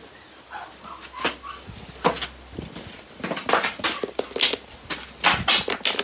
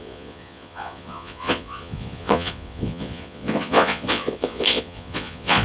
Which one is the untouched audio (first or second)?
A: first